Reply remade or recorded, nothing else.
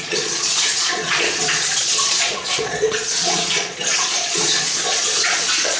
remade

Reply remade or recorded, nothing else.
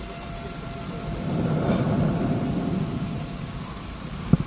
remade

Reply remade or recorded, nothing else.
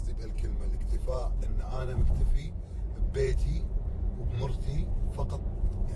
remade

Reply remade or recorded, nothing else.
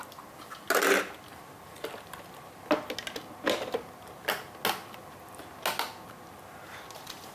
recorded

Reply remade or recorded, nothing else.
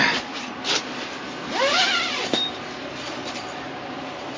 recorded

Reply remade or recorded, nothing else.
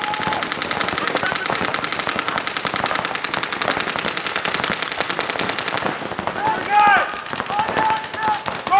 recorded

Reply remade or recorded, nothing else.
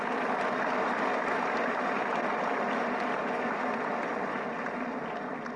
recorded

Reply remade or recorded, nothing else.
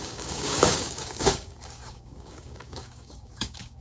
remade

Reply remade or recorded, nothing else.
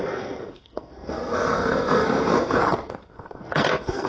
remade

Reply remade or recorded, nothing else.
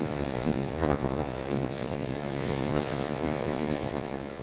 remade